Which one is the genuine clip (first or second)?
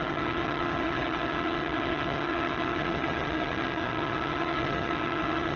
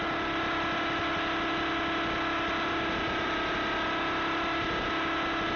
second